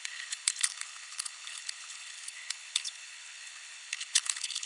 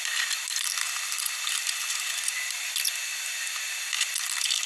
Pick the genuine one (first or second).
second